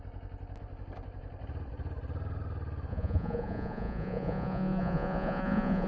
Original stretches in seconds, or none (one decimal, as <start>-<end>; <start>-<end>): 0.0-2.9